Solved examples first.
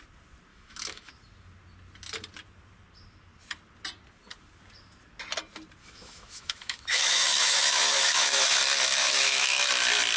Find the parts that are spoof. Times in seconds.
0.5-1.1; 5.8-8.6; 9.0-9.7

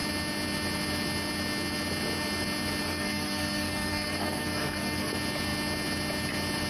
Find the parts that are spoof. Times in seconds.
2.8-5.1

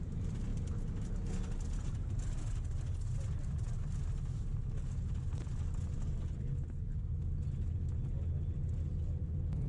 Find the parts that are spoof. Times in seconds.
none

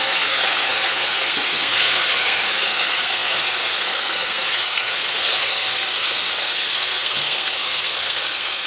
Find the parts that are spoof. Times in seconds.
0.0-8.7